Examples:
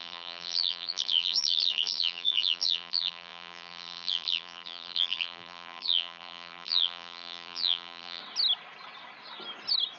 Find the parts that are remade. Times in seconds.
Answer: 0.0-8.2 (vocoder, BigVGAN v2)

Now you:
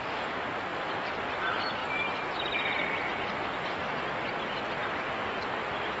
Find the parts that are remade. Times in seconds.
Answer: 0.7-1.4 (vocoder, BigVGAN v2); 1.8-4.1; 4.8-6.0